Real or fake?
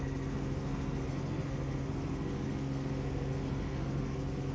fake